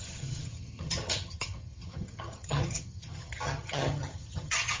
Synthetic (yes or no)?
yes